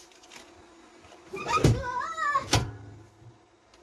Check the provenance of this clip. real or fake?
real